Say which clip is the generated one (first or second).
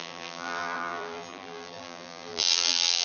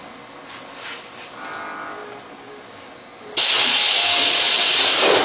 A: first